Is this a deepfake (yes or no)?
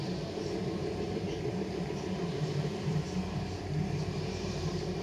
yes